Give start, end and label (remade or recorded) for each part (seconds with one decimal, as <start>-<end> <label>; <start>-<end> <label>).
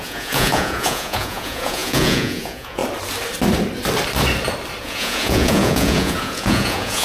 0.0-2.8 remade; 2.8-4.8 recorded; 4.8-7.0 remade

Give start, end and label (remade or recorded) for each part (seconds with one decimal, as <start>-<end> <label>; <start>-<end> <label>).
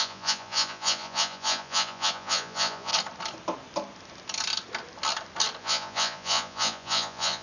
0.0-2.9 remade; 2.9-5.6 recorded; 5.6-7.4 remade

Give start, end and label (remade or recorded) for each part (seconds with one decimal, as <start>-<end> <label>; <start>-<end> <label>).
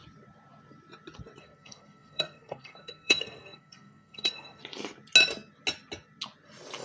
0.0-1.4 recorded; 1.4-4.6 remade; 4.6-6.8 recorded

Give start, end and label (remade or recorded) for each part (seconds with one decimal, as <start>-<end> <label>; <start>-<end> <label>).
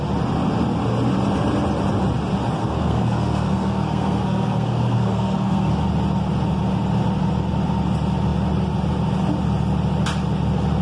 0.0-2.6 recorded; 2.6-5.7 remade; 5.7-10.8 recorded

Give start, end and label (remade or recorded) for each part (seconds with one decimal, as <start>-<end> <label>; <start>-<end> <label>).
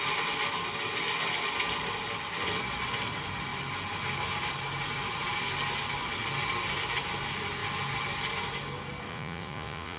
0.0-9.1 recorded; 9.1-10.0 remade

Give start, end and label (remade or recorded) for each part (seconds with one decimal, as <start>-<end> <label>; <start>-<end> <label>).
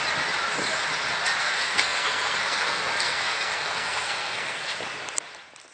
0.0-1.4 recorded; 1.4-4.8 remade; 4.8-5.7 recorded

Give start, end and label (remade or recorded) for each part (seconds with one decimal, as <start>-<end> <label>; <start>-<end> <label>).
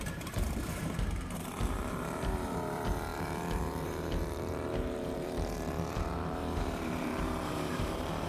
0.0-8.3 remade